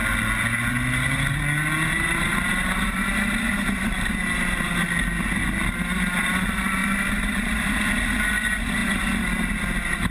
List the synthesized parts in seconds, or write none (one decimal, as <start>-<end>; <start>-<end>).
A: 1.9-4.1; 6.8-7.7